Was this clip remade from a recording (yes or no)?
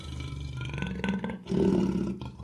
no